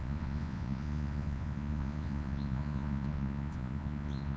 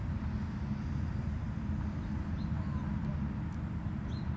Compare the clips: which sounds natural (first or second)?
second